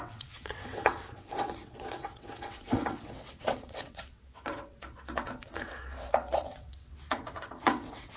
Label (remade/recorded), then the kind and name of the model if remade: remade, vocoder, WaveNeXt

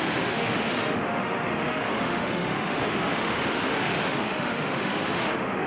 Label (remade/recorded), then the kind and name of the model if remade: remade, autoencoder, DAC-VAE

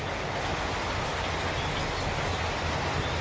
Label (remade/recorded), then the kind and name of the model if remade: recorded